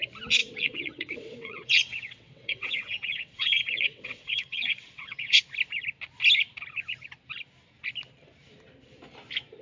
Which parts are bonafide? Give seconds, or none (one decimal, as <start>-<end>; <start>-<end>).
0.0-0.4; 5.4-9.6